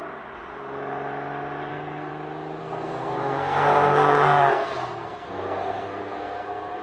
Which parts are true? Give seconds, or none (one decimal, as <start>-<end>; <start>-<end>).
0.0-1.7; 2.1-2.6